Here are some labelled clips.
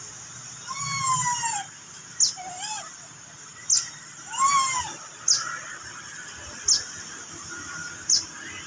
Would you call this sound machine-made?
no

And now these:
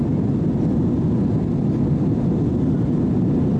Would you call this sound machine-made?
no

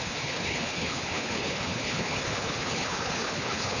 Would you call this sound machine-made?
yes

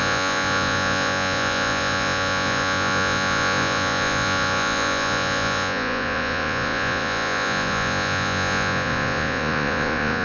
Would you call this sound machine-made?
yes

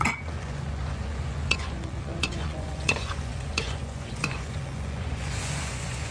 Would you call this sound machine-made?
yes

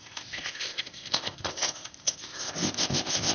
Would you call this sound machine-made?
yes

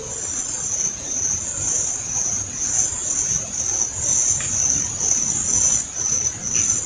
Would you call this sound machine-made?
no